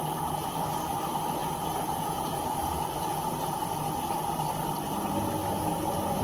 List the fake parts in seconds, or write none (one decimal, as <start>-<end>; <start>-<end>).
1.4-3.0